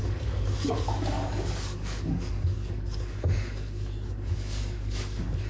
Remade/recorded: remade